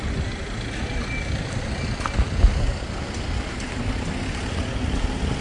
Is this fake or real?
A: real